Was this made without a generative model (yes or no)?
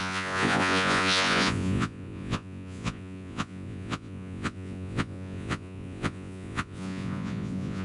no